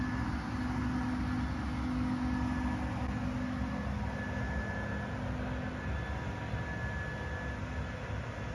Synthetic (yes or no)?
no